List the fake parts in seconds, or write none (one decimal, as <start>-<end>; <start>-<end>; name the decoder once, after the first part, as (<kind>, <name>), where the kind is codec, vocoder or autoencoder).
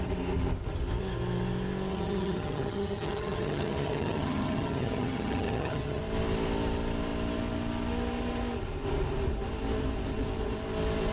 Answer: 1.9-6.0 (vocoder, HiFi-GAN)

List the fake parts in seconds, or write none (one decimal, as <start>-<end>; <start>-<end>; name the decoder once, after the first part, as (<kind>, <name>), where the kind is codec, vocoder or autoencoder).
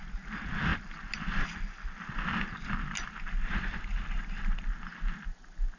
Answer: none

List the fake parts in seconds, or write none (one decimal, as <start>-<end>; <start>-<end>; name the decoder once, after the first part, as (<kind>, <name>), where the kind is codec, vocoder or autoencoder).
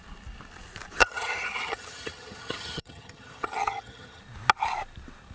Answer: 1.0-4.2 (vocoder, HiFi-GAN)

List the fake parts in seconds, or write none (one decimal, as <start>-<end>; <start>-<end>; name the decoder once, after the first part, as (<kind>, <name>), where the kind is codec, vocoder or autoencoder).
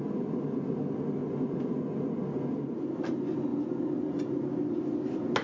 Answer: none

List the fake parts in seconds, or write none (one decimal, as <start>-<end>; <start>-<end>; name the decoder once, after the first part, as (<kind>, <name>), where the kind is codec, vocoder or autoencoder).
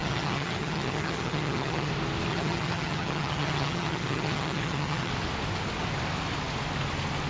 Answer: 0.0-1.9 (vocoder, HiFi-GAN); 2.3-5.1